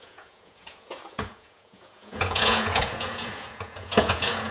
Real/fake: fake